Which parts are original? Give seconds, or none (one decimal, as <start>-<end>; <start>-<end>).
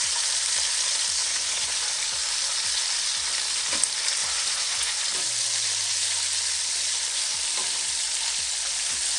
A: 0.0-1.2; 1.8-4.2; 5.0-9.2